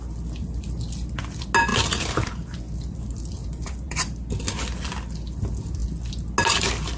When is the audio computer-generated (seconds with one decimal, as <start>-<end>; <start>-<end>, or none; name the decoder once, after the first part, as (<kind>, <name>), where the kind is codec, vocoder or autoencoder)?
1.7-2.6 (vocoder, BigVGAN v2); 3.4-4.0